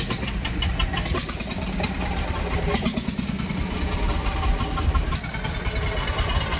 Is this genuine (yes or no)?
yes